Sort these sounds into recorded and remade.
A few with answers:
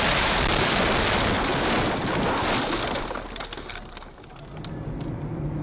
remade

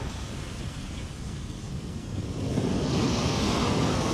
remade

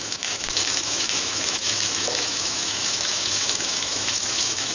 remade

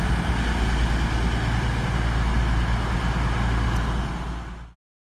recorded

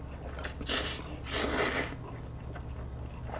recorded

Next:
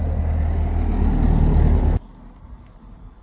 recorded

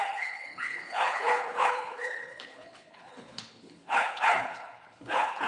remade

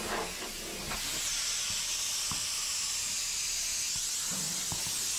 recorded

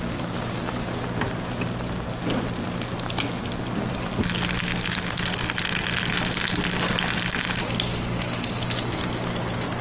recorded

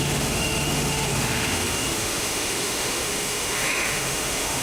remade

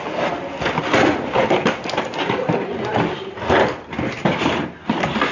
recorded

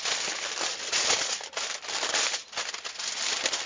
recorded